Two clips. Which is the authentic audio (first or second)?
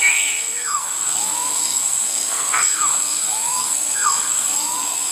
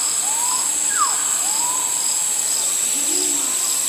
second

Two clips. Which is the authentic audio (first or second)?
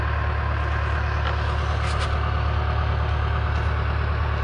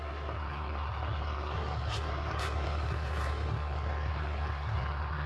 first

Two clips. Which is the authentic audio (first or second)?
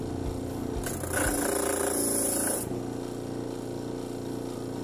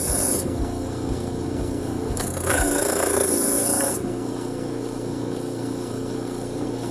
first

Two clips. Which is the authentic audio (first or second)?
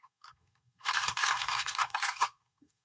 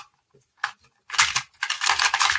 second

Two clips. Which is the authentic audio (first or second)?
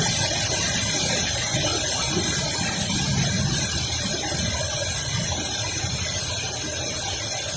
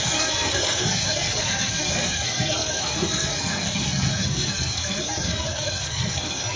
first